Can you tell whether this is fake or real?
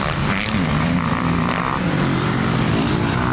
fake